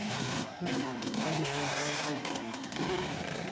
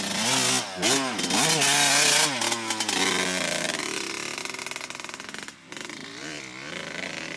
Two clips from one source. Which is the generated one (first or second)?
first